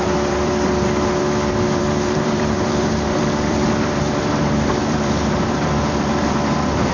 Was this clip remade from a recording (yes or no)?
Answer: yes